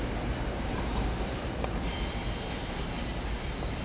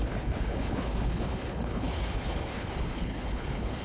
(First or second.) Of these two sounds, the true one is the first